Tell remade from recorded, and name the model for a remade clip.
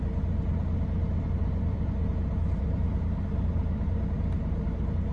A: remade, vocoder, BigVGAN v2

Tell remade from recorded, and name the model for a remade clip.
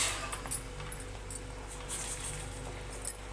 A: recorded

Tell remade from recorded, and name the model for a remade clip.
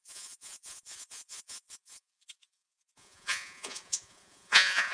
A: remade, vocoder, Vocos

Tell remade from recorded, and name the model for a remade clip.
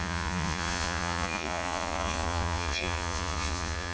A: remade, vocoder, Vocos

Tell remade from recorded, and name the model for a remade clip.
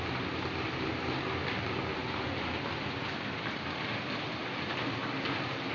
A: recorded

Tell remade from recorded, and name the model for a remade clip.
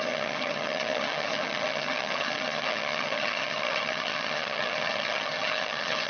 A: remade, vocoder, HiFi-GAN